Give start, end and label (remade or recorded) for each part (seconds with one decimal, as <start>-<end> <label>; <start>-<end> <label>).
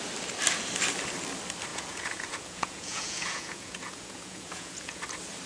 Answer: 0.0-1.7 recorded; 1.7-5.0 remade; 5.0-5.5 recorded